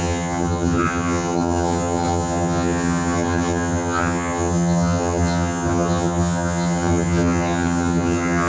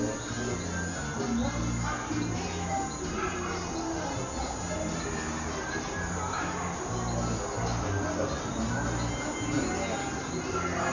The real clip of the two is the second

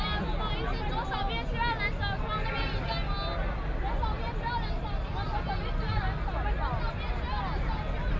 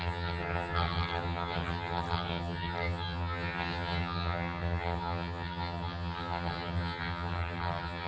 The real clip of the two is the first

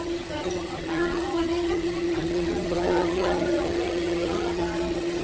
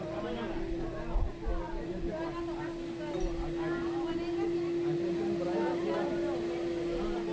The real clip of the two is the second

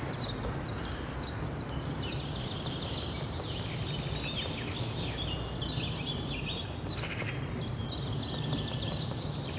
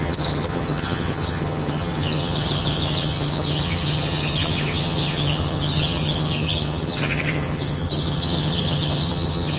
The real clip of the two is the first